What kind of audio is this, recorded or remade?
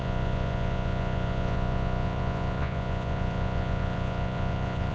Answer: remade